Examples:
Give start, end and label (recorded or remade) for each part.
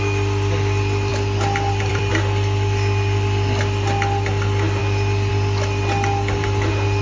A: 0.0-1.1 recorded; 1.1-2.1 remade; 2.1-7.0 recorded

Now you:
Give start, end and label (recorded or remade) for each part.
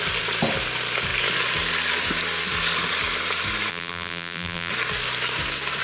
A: 0.0-3.7 recorded; 3.7-4.7 remade; 4.7-5.8 recorded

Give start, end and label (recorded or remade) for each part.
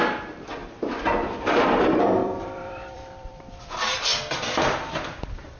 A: 0.0-0.6 remade; 0.6-1.5 recorded; 1.5-5.6 remade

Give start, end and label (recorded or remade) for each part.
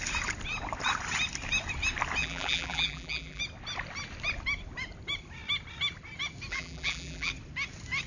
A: 0.0-2.2 recorded; 2.2-3.4 remade; 3.4-6.5 recorded; 6.5-7.3 remade; 7.3-8.1 recorded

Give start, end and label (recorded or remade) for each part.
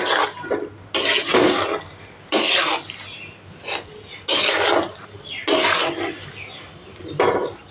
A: 0.0-1.3 recorded; 1.3-2.6 remade; 2.6-7.7 recorded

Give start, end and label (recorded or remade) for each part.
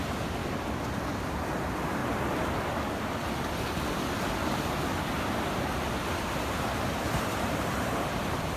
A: 0.0-0.4 remade; 0.4-1.0 recorded; 1.0-2.0 remade; 2.0-5.9 recorded; 5.9-8.6 remade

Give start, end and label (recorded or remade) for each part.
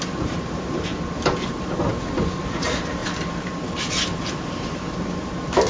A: 0.0-0.9 remade; 0.9-1.5 recorded; 1.5-1.9 remade; 1.9-2.4 recorded; 2.4-5.7 remade